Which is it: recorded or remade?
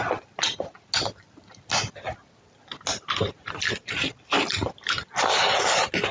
recorded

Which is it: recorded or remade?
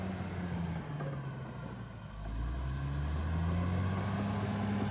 recorded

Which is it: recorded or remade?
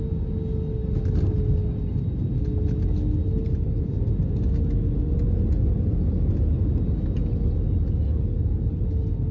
recorded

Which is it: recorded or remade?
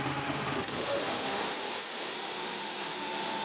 remade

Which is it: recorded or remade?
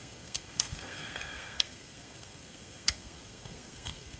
remade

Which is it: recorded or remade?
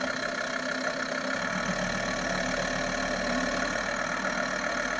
recorded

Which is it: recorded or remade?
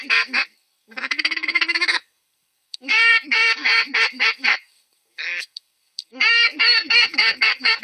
remade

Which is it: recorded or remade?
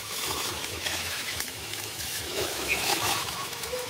remade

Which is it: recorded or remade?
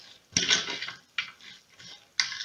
recorded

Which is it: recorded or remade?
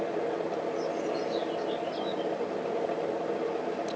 recorded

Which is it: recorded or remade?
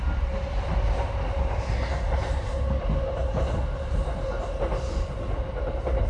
recorded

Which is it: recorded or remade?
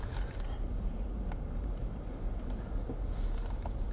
recorded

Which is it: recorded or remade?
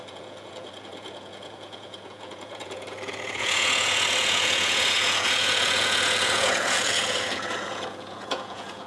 remade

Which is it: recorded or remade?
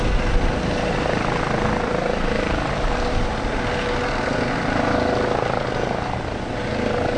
recorded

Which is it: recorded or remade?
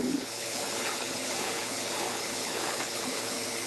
remade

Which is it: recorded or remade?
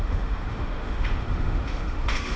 remade